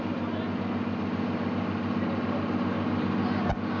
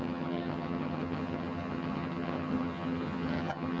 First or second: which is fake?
second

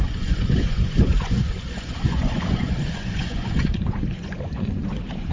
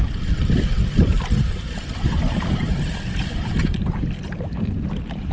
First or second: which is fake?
first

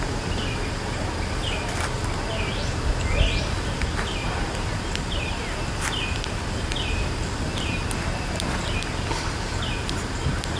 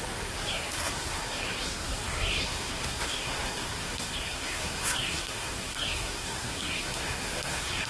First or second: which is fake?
second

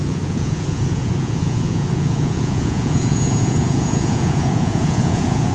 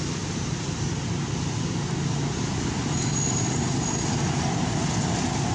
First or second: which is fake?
first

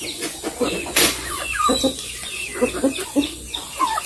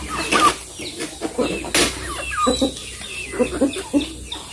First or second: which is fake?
first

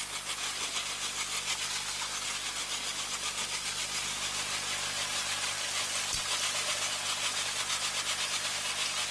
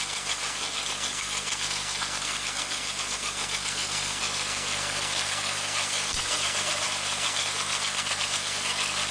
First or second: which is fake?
second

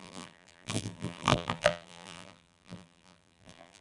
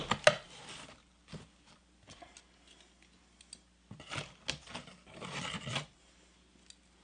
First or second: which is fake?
first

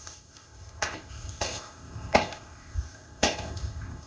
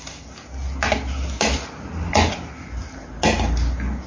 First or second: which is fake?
first